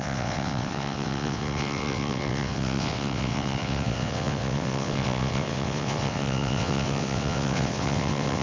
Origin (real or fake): fake